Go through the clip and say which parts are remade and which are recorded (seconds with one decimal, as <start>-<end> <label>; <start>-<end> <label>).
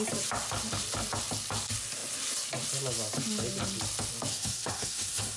0.0-4.3 recorded; 4.3-5.4 remade